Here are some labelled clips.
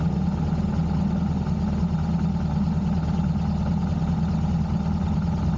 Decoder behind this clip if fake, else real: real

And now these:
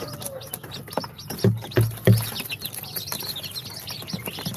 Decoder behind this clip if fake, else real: real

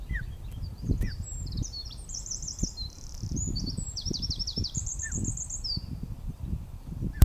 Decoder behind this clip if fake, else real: fake, vocoder, BigVGAN v2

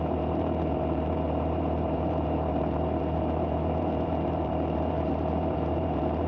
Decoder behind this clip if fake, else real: fake, vocoder, BigVGAN v2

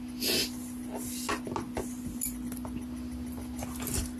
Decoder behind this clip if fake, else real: real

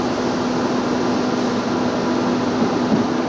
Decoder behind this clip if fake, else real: real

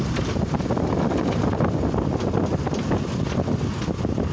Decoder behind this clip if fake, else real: real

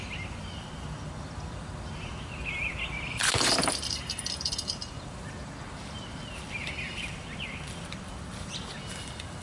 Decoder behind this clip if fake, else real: fake, vocoder, BigVGAN v2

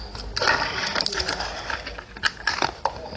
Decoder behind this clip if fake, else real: real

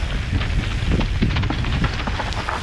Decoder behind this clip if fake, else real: real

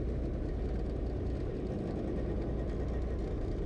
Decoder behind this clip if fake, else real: real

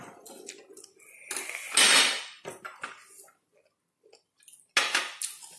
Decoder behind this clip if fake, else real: real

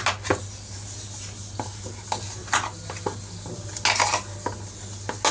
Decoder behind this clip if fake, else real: real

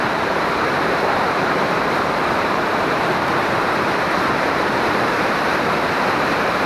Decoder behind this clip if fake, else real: fake, vocoder, BigVGAN v2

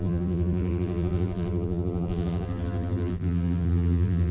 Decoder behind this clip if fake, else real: fake, vocoder, BigVGAN v2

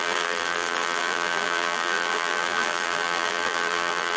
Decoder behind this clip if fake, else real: fake, vocoder, BigVGAN v2